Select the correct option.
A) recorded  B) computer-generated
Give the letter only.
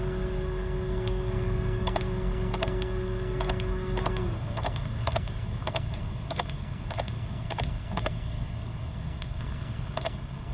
B